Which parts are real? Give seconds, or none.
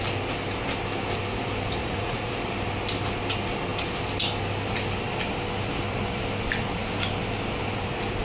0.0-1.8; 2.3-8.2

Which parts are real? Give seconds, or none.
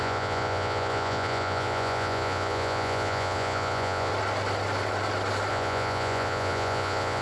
4.1-5.5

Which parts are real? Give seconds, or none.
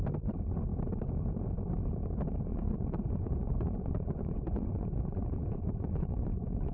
0.0-2.5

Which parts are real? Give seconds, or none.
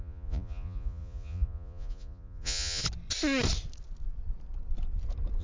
2.8-5.4